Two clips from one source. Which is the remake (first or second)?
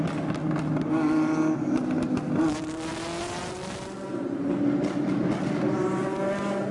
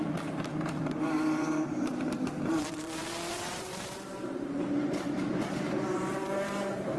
second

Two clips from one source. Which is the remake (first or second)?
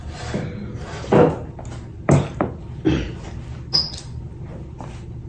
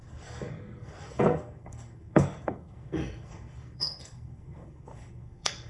second